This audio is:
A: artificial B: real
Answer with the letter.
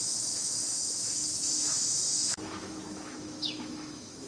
A